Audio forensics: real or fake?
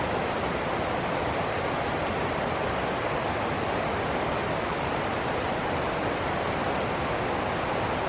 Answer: real